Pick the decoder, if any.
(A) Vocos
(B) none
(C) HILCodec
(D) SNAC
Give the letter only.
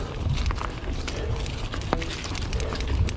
B